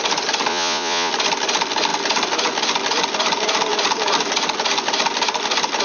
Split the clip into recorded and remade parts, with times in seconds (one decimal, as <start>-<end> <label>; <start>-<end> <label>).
0.0-0.5 recorded; 0.5-1.1 remade; 1.1-5.8 recorded